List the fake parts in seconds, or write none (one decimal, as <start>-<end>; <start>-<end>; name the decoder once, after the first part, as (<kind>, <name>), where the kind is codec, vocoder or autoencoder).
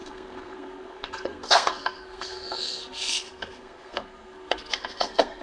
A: 0.0-5.4 (codec, SNAC)